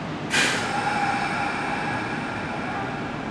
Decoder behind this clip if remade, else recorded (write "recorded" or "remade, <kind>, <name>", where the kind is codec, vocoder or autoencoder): recorded